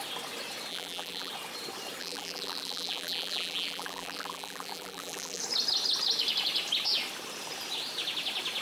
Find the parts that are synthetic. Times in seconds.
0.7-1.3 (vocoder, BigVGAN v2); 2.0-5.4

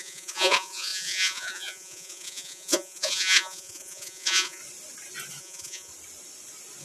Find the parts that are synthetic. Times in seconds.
0.0-4.6 (vocoder, Vocos); 5.4-5.9

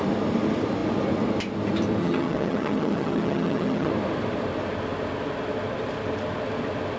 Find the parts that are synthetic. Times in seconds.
2.0-3.9 (vocoder, HiFi-GAN)

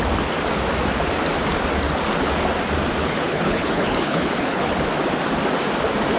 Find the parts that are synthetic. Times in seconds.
3.0-4.7 (codec, HILCodec)